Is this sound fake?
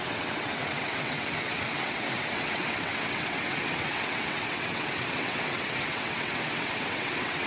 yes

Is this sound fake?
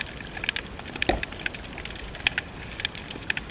no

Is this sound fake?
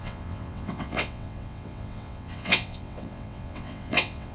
yes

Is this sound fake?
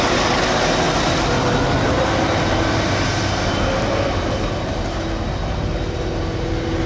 no